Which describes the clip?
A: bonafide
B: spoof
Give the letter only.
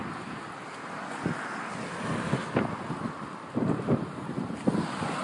A